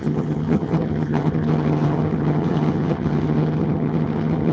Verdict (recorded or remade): remade